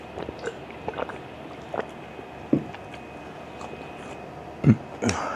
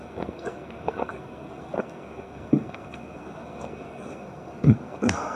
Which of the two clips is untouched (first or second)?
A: first